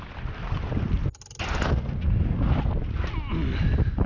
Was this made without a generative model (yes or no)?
yes